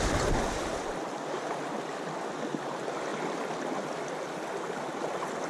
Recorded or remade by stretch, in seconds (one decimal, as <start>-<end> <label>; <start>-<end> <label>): 0.0-5.5 recorded